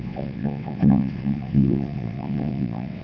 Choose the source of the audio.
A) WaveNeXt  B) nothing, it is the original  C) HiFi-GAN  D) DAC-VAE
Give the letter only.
A